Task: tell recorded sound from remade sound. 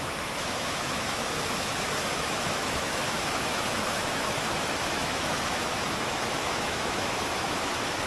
remade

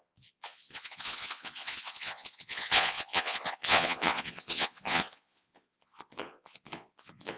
remade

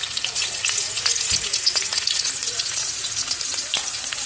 remade